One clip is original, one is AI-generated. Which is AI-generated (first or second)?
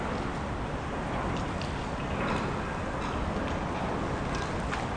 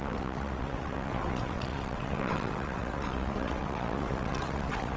second